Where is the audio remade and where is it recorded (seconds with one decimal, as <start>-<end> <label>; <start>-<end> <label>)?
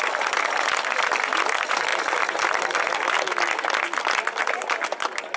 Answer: 0.0-5.4 recorded